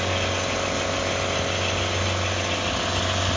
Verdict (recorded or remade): recorded